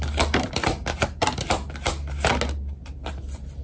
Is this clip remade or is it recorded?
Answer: recorded